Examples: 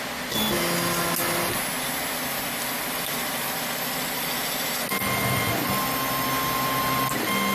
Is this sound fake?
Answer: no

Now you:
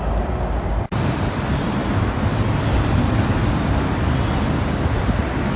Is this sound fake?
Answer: no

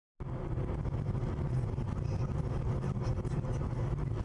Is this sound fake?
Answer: no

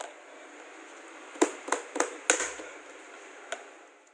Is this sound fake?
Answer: no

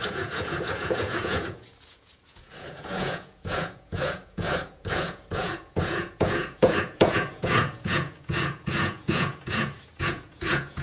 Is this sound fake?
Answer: yes